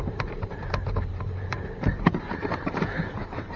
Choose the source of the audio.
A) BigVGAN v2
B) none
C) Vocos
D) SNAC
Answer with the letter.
A